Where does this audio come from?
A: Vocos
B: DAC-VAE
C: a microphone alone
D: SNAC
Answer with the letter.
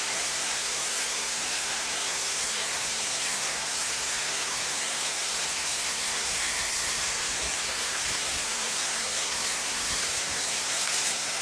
D